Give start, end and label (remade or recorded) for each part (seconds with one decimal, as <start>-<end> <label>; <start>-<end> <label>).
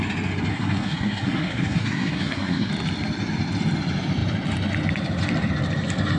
0.0-0.5 recorded; 0.5-2.7 remade; 2.7-6.2 recorded